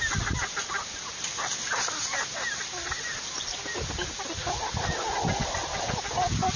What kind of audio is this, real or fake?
real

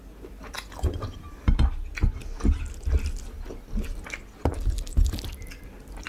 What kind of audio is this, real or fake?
real